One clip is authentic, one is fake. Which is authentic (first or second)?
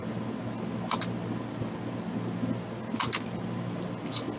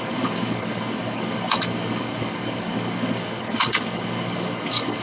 first